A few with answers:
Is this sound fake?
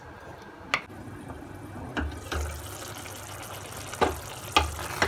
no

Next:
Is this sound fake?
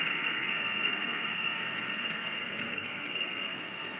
yes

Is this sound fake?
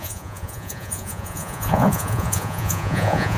yes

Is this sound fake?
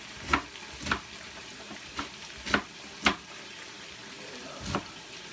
no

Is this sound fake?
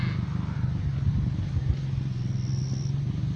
no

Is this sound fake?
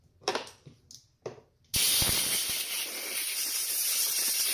no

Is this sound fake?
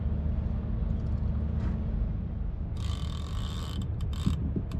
no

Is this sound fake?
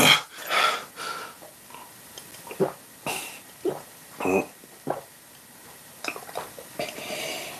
no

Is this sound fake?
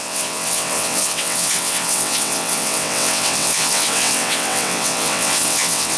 yes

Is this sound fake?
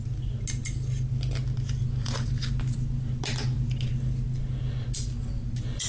no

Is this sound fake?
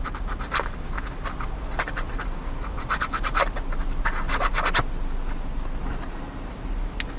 no